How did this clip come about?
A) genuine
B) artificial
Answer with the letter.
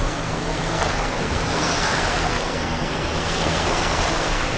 B